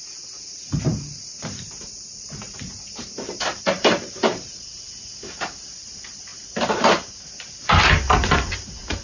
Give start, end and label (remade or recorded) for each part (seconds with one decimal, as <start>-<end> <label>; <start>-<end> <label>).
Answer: 0.0-9.0 remade